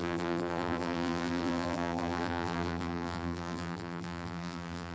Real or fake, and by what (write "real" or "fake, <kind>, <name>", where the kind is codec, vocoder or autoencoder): fake, vocoder, BigVGAN v2